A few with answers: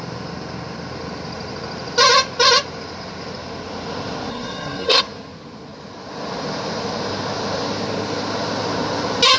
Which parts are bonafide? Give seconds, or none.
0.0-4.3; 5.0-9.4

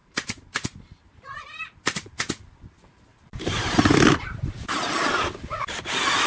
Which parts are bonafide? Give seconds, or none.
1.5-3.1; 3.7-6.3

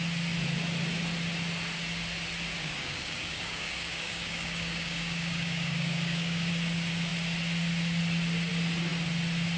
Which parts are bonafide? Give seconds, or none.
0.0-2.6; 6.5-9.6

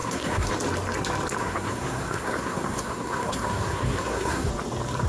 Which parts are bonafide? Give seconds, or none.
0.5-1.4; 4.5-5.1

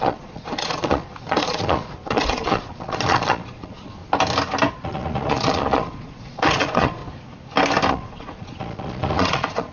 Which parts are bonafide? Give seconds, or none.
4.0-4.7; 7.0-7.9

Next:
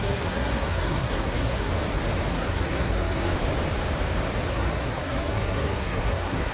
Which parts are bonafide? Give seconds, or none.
1.7-2.3; 3.3-4.5

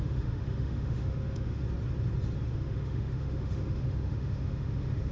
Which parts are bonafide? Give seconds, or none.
1.6-2.5